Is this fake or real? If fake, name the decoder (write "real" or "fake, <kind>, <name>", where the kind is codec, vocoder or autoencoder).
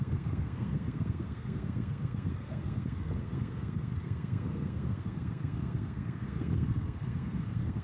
fake, codec, SNAC